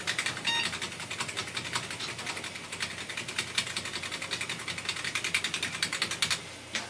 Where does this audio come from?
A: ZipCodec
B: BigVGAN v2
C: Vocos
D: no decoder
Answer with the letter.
D